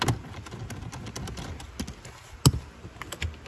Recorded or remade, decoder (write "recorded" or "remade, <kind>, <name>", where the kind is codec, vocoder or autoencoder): recorded